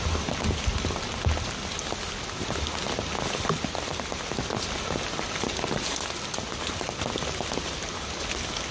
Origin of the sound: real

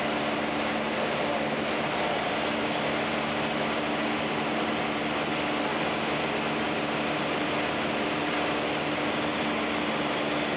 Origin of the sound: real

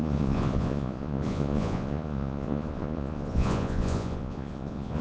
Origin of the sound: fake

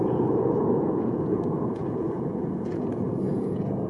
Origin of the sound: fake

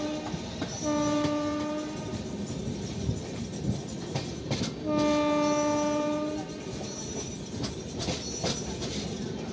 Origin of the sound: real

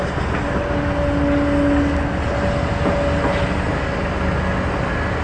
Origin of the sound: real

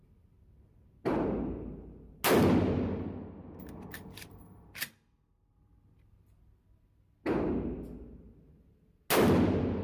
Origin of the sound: real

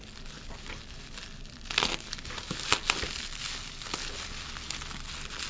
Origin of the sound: real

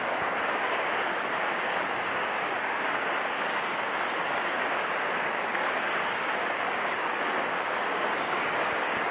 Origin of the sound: fake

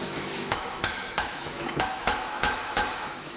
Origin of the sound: fake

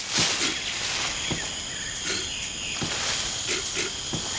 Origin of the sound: real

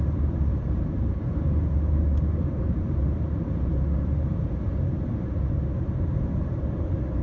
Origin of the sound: fake